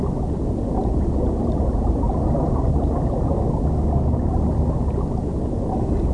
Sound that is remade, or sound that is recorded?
recorded